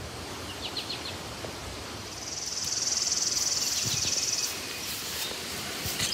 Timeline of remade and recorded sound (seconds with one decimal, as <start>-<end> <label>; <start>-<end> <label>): 0.0-6.1 recorded